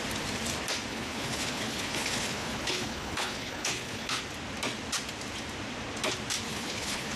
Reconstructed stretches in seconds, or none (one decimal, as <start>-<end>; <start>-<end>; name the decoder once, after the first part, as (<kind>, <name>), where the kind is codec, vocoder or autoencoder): 0.9-4.2 (codec, HILCodec); 6.5-7.2